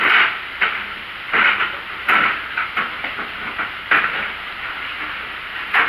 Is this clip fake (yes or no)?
no